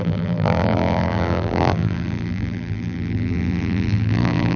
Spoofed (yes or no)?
yes